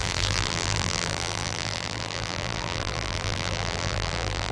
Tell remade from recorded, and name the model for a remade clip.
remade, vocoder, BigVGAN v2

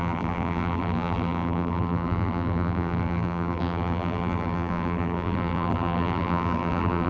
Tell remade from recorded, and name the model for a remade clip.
remade, vocoder, BigVGAN v2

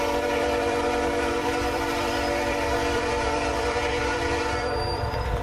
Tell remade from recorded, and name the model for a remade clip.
remade, vocoder, BigVGAN v2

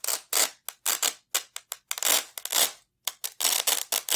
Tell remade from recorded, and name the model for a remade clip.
recorded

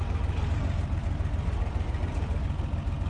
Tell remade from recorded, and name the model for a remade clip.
recorded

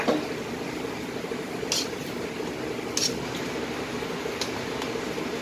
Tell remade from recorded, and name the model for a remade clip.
recorded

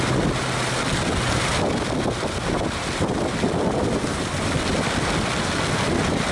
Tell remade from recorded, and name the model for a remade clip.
recorded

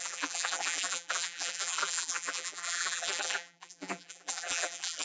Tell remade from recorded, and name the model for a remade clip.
remade, vocoder, BigVGAN v2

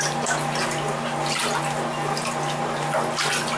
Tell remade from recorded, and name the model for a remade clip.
recorded